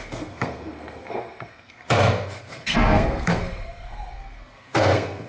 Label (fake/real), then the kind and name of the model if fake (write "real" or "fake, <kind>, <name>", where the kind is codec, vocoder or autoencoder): fake, codec, SNAC